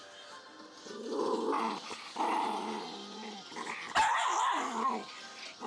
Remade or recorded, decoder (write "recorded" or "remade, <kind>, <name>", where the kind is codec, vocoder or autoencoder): recorded